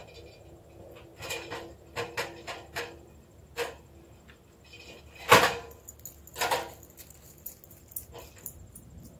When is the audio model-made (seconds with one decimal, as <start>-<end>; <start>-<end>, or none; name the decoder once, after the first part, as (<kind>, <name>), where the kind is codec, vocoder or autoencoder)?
none

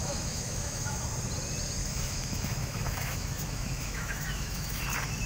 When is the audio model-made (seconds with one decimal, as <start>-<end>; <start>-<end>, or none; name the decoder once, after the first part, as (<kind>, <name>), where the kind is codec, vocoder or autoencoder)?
0.0-1.0 (autoencoder, DAC-VAE); 1.8-4.8

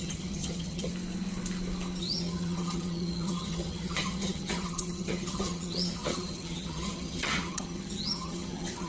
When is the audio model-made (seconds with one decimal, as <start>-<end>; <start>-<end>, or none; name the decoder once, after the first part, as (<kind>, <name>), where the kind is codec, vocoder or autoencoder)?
0.0-0.9 (vocoder, HiFi-GAN); 2.0-8.9

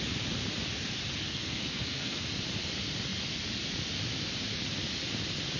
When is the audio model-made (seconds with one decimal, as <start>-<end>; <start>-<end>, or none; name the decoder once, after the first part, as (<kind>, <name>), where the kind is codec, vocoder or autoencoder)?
1.2-2.2 (codec, SNAC)

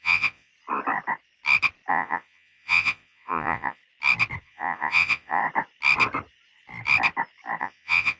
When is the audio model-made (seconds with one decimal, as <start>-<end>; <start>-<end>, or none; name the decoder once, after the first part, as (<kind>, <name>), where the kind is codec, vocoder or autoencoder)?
0.0-0.5 (vocoder, Vocos); 1.9-3.8; 4.4-5.4; 7.6-8.2

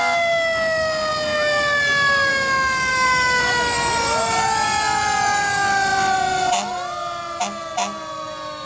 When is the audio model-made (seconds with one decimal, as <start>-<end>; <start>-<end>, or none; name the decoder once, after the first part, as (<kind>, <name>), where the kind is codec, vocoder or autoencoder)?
2.9-3.4 (autoencoder, DAC-VAE)

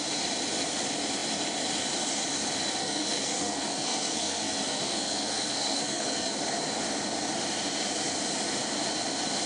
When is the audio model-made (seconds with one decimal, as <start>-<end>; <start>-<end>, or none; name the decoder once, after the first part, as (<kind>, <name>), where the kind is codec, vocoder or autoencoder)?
2.8-6.3 (codec, SNAC)

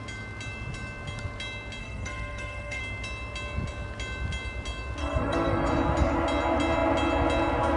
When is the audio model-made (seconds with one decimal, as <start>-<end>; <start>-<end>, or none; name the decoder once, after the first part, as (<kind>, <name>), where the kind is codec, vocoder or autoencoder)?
1.8-2.8 (codec, SNAC); 5.0-5.7